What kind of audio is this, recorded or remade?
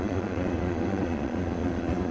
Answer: remade